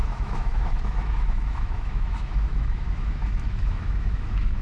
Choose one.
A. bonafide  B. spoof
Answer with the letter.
B